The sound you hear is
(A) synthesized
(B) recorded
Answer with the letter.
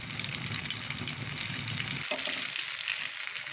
B